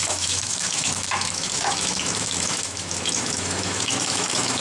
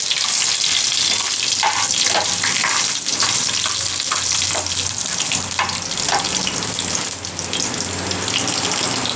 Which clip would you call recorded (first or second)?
second